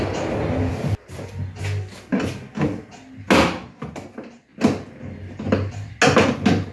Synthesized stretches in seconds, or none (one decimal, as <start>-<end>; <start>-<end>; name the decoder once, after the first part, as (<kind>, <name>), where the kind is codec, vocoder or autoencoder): none